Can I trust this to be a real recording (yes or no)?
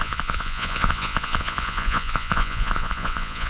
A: no